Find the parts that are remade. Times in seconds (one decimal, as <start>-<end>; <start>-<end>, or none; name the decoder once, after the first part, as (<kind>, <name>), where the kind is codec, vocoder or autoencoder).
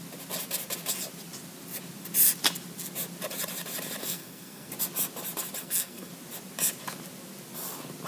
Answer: 4.0-4.7 (codec, SNAC); 5.6-6.1